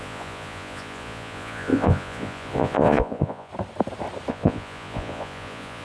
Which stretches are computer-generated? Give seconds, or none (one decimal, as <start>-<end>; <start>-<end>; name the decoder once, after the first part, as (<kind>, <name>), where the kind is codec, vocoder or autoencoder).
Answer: 0.0-3.5 (vocoder, Vocos); 4.3-5.8